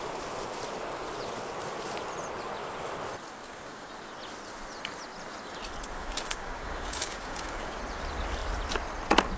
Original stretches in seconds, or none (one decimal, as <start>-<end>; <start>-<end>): 0.0-3.4; 3.9-6.0; 7.8-9.4